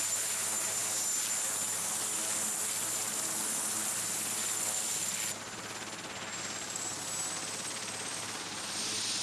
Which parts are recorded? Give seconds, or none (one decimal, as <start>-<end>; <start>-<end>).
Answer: 0.0-9.2